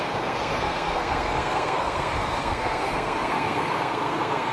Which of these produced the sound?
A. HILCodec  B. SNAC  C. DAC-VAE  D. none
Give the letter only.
B